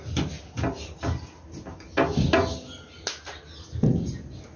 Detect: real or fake real